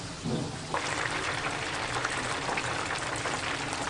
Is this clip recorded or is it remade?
recorded